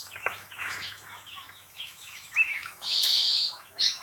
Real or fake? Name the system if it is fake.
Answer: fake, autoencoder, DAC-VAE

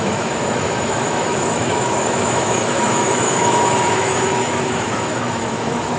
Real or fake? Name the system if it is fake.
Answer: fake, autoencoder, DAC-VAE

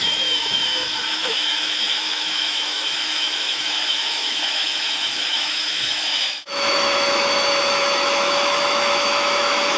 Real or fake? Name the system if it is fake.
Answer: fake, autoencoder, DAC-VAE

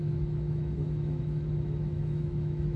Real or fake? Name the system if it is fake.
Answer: fake, autoencoder, DAC-VAE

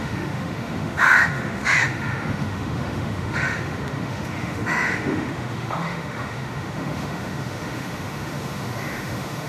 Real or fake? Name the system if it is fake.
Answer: fake, autoencoder, DAC-VAE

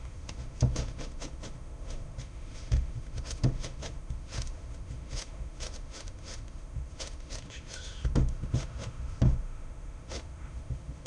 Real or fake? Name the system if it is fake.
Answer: fake, autoencoder, DAC-VAE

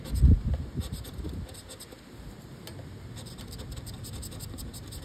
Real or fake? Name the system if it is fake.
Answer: real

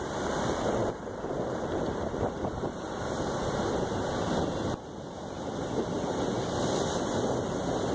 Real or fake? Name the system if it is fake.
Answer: real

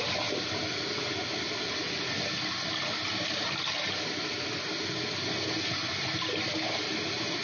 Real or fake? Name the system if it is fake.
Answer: real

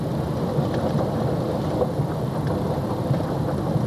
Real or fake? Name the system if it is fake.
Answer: real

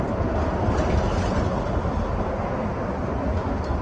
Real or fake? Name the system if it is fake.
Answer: real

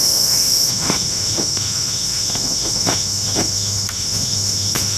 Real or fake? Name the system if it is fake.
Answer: fake, autoencoder, DAC-VAE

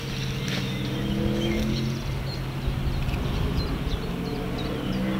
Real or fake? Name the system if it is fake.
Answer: real